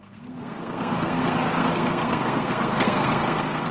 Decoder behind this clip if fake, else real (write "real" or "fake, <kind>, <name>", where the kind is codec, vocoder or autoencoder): fake, codec, SNAC